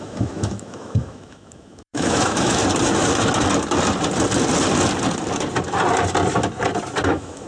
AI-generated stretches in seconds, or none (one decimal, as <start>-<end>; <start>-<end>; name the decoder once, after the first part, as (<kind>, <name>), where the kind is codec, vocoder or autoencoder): 0.0-2.6 (autoencoder, DAC-VAE); 7.1-7.5